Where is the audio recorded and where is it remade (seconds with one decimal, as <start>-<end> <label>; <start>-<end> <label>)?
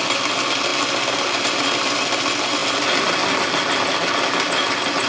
0.0-5.1 recorded